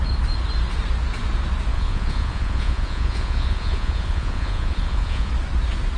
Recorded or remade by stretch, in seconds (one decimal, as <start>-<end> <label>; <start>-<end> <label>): 0.0-1.7 recorded; 1.7-5.3 remade; 5.3-6.0 recorded